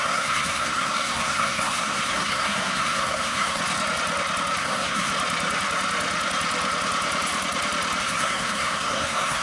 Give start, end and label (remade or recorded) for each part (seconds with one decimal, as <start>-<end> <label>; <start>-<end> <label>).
0.0-3.6 remade; 3.6-4.6 recorded; 4.6-5.1 remade; 5.1-8.0 recorded; 8.0-9.4 remade